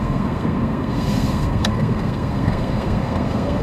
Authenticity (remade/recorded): remade